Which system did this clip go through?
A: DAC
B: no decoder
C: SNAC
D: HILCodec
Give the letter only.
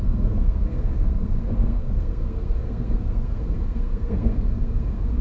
C